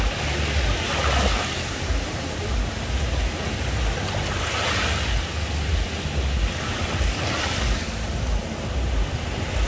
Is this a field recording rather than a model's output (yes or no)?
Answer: yes